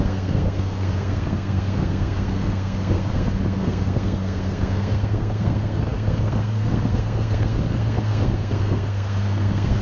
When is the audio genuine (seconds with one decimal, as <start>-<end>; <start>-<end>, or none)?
none